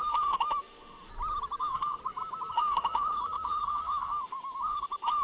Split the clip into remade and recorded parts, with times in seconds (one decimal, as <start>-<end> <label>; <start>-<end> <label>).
0.0-1.1 remade; 1.1-1.6 recorded; 1.6-2.0 remade; 2.0-2.5 recorded; 2.5-5.2 remade